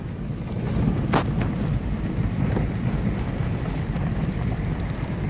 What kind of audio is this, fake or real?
real